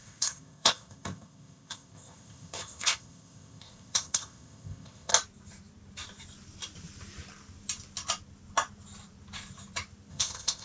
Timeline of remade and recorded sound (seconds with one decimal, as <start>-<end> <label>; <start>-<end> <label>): 0.0-5.1 remade; 5.1-10.1 recorded; 10.1-10.6 remade